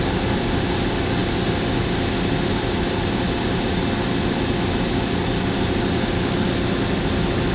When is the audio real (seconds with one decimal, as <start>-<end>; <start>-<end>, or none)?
0.0-7.5